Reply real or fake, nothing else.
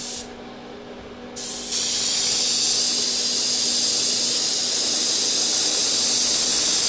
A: real